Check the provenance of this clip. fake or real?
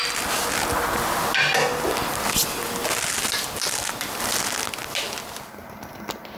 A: real